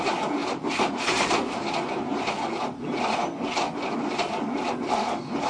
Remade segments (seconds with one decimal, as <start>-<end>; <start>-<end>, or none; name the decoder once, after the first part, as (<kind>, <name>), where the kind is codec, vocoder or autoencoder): none